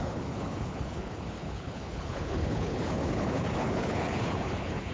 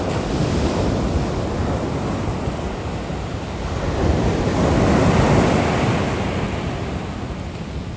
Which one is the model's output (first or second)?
first